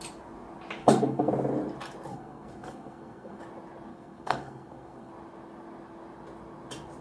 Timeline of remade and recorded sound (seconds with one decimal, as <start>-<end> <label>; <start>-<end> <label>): 0.0-0.8 recorded; 0.8-1.3 remade; 1.3-2.1 recorded; 2.1-3.4 remade; 3.4-3.9 recorded; 3.9-5.1 remade; 5.1-7.0 recorded